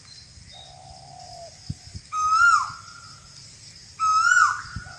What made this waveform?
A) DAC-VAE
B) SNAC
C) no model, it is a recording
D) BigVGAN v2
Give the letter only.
C